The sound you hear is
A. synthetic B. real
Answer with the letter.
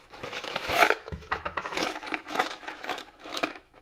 A